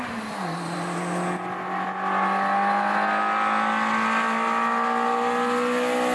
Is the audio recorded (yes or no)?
yes